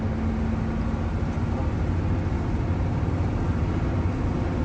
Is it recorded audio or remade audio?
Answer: recorded